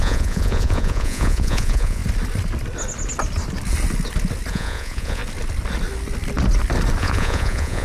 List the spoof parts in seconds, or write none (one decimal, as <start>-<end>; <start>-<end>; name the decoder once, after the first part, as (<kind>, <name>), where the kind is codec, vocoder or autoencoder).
0.0-2.0 (vocoder, Vocos); 4.5-5.2; 7.0-7.8